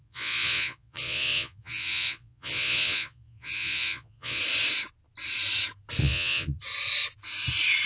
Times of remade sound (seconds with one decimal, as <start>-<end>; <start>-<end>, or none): 0.0-4.4; 6.0-6.6

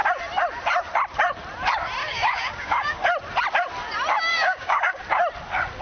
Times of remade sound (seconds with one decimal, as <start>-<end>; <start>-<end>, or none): 2.0-3.0; 4.3-5.0

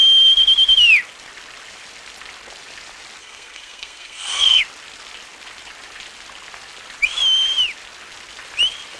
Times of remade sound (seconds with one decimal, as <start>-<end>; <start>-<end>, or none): 3.2-4.6